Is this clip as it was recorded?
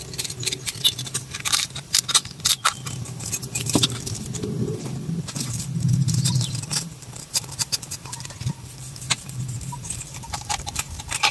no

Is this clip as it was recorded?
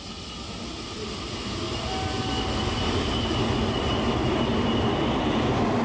yes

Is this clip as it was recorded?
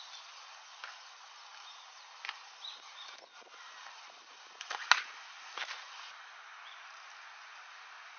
yes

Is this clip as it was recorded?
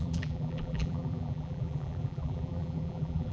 no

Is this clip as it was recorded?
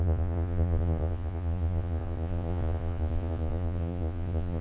no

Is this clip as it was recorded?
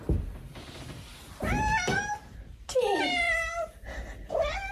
no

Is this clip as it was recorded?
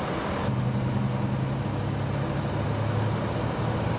yes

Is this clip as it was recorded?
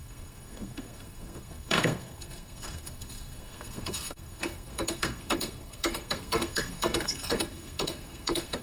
no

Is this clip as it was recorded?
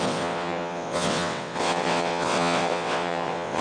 no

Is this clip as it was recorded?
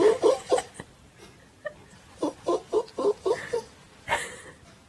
no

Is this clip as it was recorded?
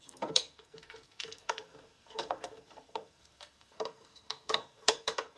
no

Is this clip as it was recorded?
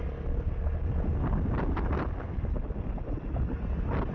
yes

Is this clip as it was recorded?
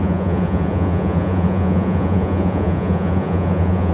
no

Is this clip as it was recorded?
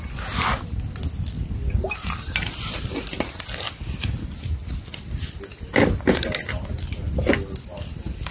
yes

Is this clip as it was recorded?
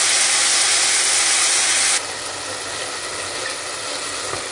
yes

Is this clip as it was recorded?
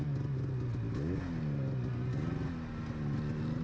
yes